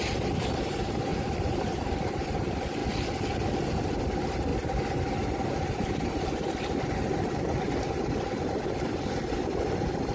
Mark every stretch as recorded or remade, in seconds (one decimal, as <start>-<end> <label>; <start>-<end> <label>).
0.0-1.1 remade; 1.1-1.7 recorded; 1.7-2.8 remade; 2.8-4.0 recorded; 4.0-4.5 remade; 4.5-5.7 recorded; 5.7-10.1 remade